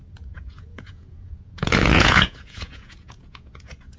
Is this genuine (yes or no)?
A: no